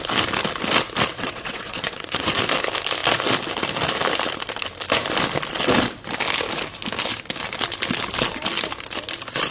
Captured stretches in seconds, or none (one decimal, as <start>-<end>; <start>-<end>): 0.0-1.1; 2.3-9.5